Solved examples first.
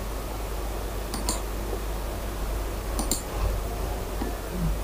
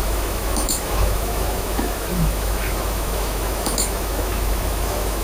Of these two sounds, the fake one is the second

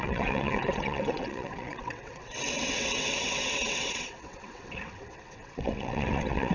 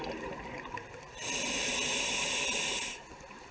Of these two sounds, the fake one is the first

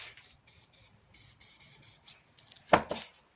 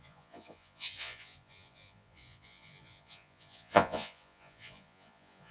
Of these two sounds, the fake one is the second